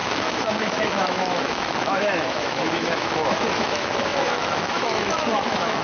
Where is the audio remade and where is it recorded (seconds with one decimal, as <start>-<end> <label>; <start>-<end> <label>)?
0.0-5.8 remade